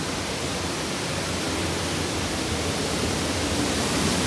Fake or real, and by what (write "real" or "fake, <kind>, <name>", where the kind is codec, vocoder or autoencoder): real